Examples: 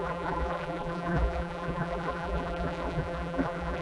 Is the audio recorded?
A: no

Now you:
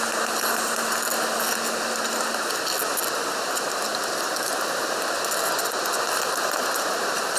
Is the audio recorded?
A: yes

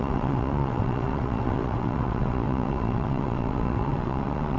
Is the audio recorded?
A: no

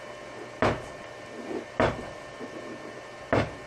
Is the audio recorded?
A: yes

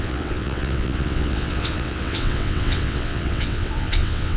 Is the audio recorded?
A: no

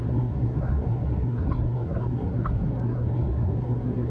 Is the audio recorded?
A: no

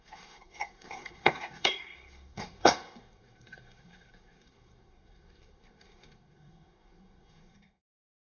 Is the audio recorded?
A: no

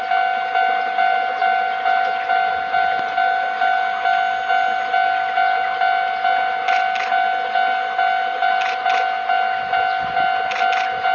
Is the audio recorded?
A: yes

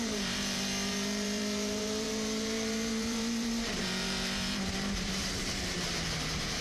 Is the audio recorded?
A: no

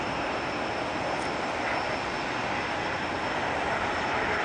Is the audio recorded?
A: yes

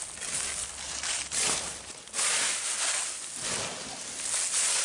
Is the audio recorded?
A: yes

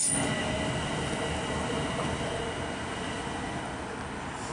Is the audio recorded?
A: yes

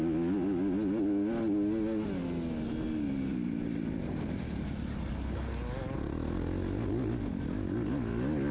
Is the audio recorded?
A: yes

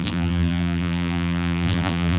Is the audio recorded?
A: no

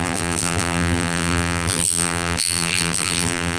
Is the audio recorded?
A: no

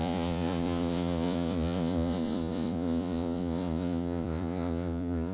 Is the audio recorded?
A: no